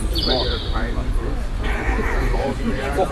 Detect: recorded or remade remade